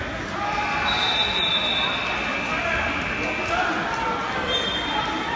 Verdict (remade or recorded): recorded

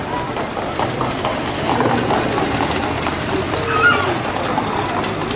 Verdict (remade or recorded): recorded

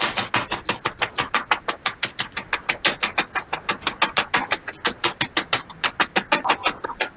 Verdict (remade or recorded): recorded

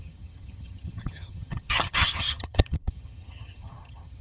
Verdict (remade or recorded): remade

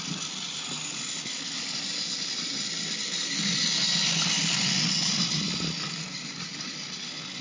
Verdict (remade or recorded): recorded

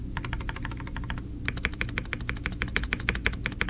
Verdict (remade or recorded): recorded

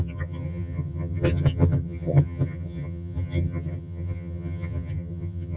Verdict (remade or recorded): remade